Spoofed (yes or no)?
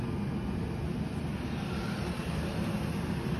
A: no